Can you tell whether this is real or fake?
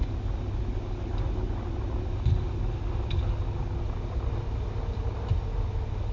real